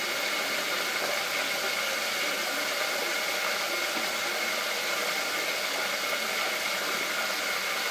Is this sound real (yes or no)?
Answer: yes